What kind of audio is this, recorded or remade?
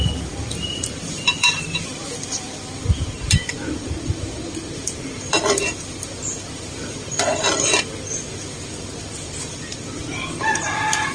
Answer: remade